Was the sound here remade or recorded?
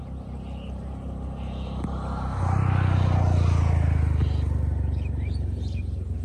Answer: recorded